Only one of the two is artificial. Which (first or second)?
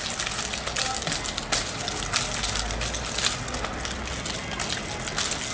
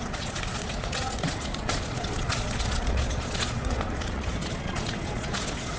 second